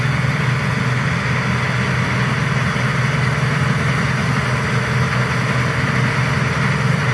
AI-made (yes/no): no